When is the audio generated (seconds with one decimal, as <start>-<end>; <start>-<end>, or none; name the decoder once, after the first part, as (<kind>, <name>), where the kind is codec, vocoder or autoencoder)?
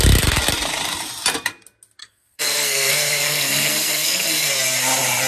2.0-4.5 (codec, SNAC)